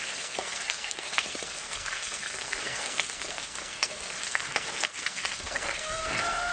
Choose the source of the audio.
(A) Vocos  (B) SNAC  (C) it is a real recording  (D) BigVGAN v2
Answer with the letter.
B